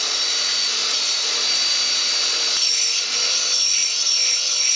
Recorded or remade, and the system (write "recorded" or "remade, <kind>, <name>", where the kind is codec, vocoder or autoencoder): recorded